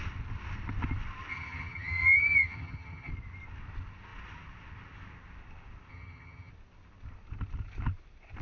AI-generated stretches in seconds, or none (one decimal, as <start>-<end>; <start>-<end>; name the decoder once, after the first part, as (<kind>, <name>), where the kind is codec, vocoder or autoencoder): 1.3-3.1 (vocoder, HiFi-GAN); 5.9-6.5